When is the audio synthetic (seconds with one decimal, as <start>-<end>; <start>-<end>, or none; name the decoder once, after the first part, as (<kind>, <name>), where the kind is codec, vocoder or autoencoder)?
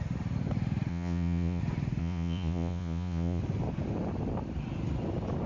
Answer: 0.9-1.6 (vocoder, Vocos); 2.0-3.4